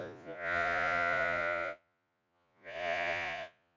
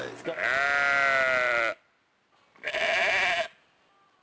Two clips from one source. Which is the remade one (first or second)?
first